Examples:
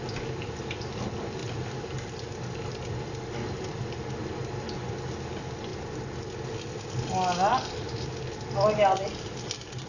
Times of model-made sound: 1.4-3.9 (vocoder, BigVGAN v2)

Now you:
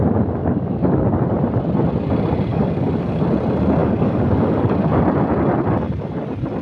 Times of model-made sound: 0.4-1.0 (codec, DAC); 2.5-3.2; 3.8-5.0

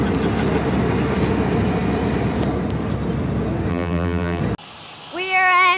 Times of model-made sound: 3.7-4.4 (vocoder, BigVGAN v2)